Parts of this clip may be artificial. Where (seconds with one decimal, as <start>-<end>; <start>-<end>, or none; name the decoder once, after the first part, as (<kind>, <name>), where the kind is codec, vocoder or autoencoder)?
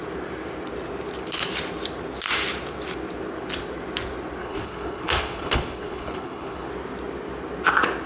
4.4-6.7 (codec, HILCodec)